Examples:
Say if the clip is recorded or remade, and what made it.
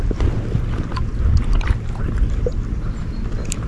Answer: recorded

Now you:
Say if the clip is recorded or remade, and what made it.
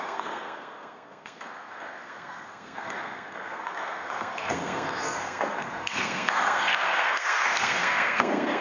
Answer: remade, codec, SNAC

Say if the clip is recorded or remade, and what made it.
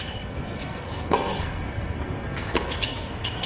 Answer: remade, codec, SNAC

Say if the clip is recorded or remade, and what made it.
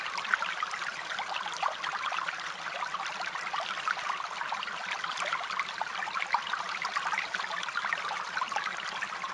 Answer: recorded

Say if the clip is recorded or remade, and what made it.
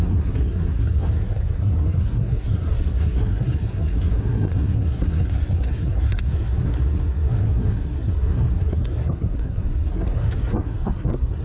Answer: remade, codec, SNAC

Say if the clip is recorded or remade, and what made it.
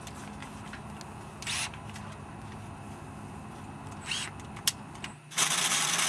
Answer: recorded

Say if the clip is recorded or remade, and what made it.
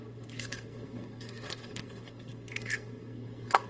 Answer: remade, codec, SNAC